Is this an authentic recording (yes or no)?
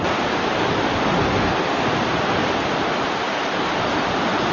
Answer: yes